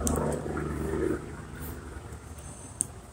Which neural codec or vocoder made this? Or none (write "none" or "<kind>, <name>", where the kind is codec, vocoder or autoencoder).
none